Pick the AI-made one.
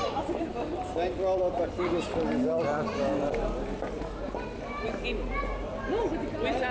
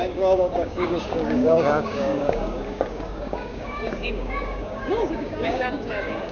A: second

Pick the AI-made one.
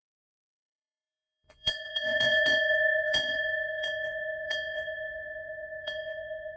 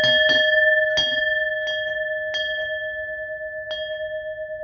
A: first